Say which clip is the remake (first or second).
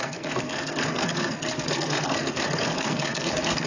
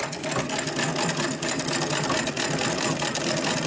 first